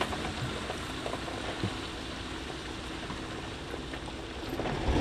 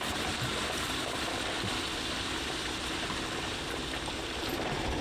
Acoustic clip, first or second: first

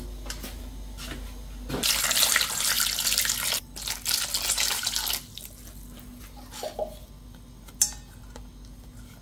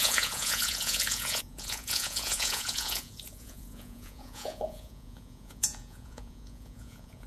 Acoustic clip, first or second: first